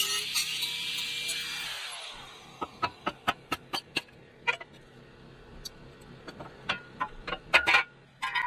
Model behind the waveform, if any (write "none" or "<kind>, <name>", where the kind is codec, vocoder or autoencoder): none